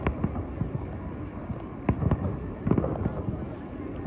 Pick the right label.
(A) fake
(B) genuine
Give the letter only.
B